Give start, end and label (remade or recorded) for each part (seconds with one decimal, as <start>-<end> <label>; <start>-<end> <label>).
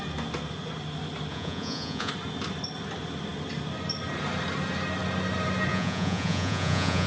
0.0-1.3 recorded; 1.3-2.1 remade; 2.1-5.7 recorded; 5.7-7.1 remade